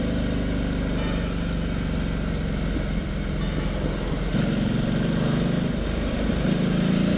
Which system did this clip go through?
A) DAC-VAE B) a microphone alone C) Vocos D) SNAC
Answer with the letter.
B